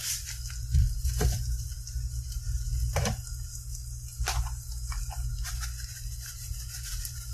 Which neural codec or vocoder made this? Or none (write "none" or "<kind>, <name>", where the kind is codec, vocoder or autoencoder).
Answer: none